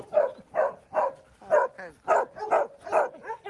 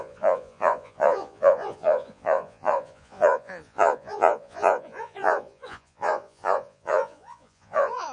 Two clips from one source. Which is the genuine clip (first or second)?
first